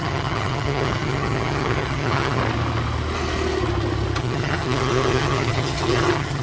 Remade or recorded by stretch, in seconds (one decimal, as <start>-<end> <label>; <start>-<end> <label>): 0.0-2.4 remade; 2.4-4.2 recorded; 4.2-6.4 remade